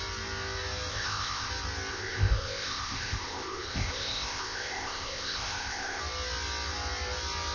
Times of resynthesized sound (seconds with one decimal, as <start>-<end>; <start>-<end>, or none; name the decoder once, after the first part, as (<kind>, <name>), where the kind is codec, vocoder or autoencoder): 0.9-1.5 (codec, ZipCodec); 1.9-6.0